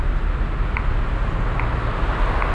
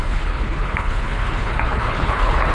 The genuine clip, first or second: first